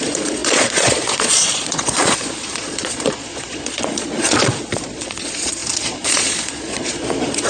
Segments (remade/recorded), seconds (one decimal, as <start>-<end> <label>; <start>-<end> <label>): 0.0-7.5 remade